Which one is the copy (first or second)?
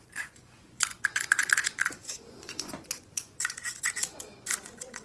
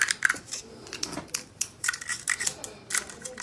first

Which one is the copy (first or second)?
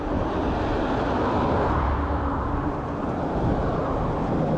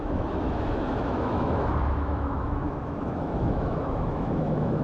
second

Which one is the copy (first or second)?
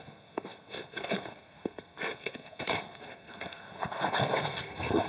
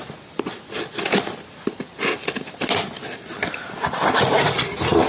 first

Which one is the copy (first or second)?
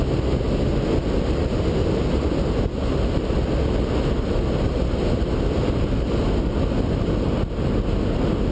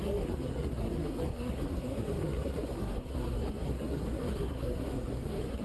second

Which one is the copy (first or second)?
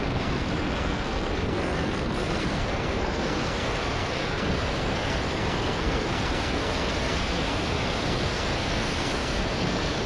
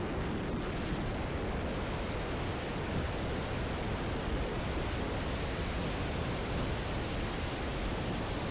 first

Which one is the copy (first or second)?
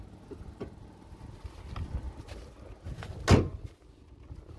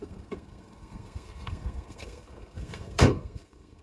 second